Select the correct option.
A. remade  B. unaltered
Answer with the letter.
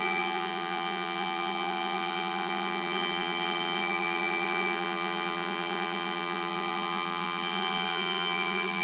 A